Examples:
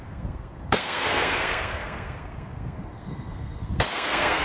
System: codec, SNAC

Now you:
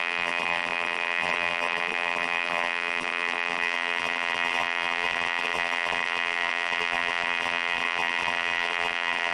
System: vocoder, BigVGAN v2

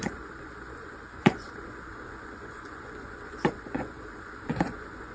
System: vocoder, Vocos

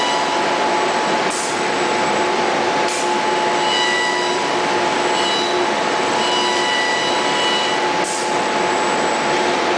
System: none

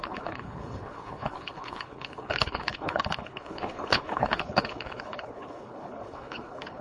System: codec, HILCodec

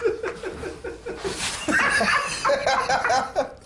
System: none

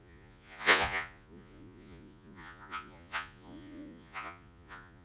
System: vocoder, Vocos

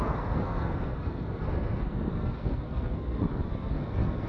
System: codec, SNAC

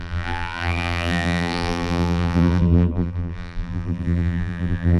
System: vocoder, BigVGAN v2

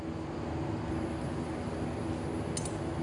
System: none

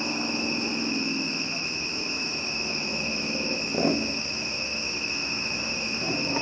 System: autoencoder, DAC-VAE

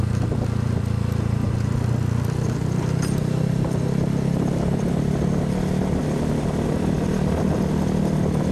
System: none